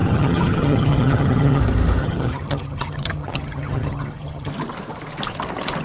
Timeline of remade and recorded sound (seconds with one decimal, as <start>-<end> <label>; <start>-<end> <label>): 0.0-1.6 remade; 1.6-2.0 recorded; 2.0-4.5 remade; 4.5-5.8 recorded